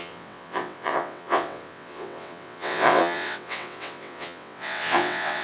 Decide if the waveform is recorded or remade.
remade